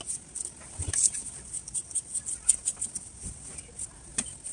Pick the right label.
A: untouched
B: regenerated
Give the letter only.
A